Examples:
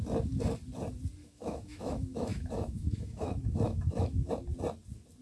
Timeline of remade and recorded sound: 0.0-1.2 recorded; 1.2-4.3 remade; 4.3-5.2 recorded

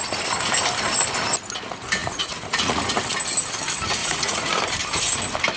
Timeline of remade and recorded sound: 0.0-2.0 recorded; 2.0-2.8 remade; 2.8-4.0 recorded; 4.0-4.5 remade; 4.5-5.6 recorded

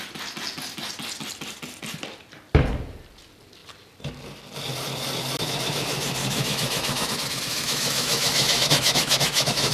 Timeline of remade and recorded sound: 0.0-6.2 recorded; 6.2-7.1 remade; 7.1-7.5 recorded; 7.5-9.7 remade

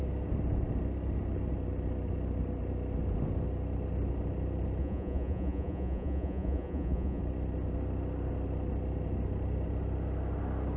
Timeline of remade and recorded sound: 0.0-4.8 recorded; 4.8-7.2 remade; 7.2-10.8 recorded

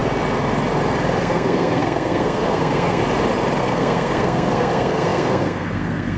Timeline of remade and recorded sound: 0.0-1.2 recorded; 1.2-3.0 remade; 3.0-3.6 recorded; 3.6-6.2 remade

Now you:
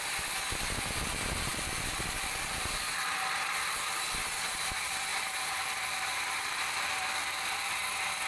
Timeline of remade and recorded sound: 0.0-1.5 recorded; 1.5-2.8 remade; 2.8-5.1 recorded; 5.1-7.7 remade; 7.7-8.3 recorded

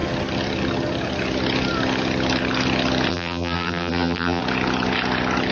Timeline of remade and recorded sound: 0.0-3.1 recorded; 3.1-4.4 remade; 4.4-5.5 recorded